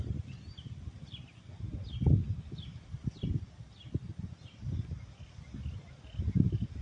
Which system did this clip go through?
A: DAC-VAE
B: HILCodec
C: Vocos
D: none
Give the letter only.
D